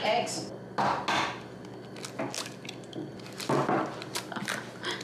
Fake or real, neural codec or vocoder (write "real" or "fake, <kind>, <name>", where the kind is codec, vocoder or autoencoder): real